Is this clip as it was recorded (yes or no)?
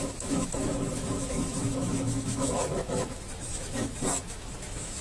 no